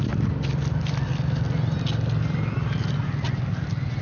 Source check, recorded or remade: recorded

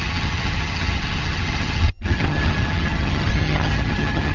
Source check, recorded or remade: remade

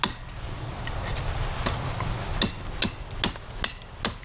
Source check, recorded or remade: recorded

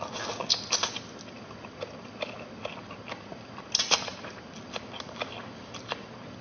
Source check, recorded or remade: recorded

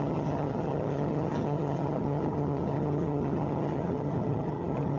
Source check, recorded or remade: remade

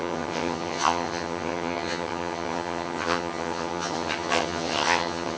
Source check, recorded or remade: remade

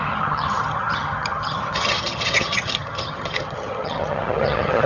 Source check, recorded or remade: remade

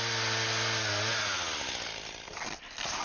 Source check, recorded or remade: recorded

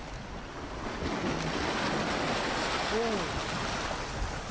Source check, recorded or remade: recorded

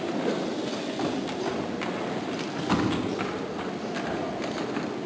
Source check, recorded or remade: recorded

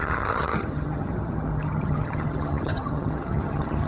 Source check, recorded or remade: remade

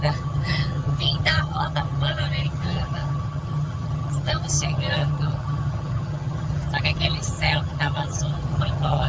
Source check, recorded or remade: remade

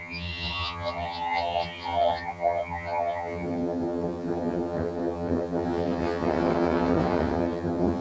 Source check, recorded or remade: remade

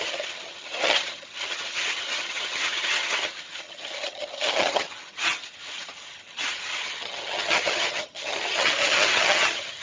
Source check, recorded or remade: remade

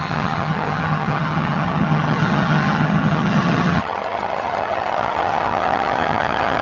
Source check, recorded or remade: remade